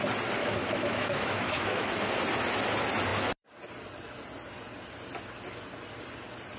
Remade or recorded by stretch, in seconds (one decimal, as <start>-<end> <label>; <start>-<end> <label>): 0.0-0.4 recorded; 0.4-1.9 remade; 1.9-6.6 recorded